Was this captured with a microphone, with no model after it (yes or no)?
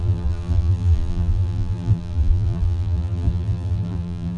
no